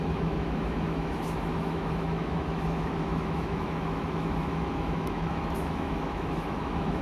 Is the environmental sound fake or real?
fake